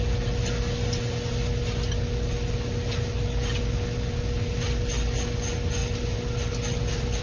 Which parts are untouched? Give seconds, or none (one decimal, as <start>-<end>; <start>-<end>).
0.0-7.2